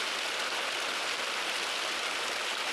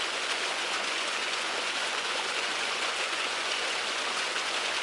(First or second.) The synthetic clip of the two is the second